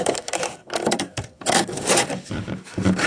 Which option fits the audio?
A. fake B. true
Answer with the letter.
A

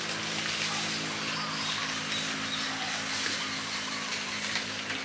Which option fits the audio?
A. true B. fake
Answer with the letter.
A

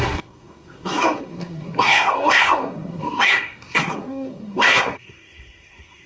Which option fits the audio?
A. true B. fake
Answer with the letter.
B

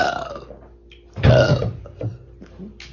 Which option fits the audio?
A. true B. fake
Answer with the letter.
A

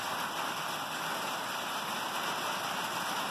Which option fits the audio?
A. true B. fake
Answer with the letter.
A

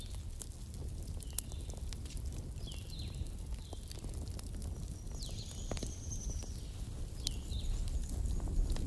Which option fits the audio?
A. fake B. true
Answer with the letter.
B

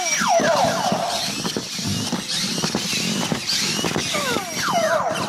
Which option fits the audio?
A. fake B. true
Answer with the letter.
B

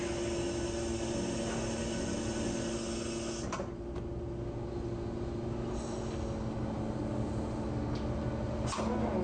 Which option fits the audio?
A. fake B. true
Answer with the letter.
B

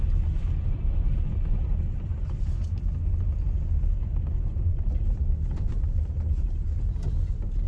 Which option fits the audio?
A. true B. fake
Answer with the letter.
A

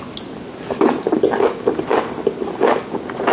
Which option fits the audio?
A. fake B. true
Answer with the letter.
B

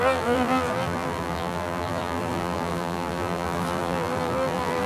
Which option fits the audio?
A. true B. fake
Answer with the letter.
B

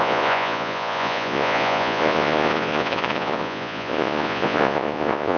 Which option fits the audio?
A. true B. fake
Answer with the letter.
B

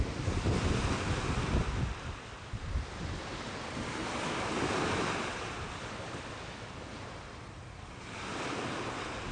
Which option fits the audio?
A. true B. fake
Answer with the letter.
A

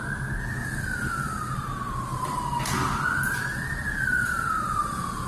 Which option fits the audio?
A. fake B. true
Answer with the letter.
B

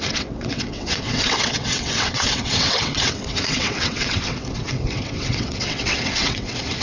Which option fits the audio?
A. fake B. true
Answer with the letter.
A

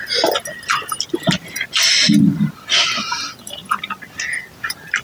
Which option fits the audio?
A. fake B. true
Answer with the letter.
B